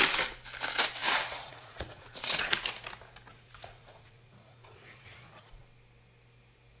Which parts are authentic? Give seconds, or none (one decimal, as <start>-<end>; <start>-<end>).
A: 0.0-1.0; 2.6-3.3; 5.6-6.8